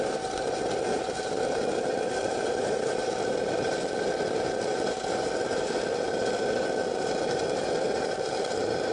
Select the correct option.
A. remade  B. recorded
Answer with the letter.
A